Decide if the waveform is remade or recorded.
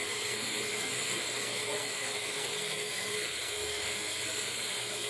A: remade